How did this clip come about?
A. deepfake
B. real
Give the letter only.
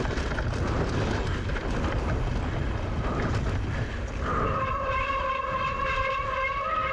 B